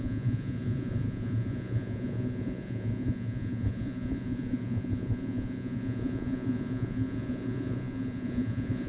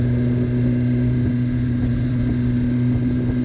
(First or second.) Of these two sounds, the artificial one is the first